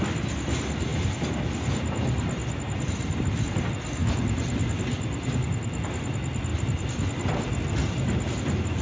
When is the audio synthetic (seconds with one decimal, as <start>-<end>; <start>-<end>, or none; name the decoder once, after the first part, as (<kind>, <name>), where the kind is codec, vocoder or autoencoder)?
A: none